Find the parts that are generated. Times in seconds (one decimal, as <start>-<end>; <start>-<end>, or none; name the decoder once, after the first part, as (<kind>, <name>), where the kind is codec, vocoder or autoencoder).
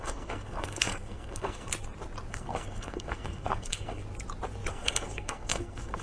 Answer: 0.0-1.7 (codec, SNAC); 2.3-4.0; 4.7-6.0